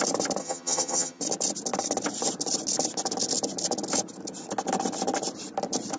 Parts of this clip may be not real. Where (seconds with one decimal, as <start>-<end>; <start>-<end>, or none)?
0.4-1.2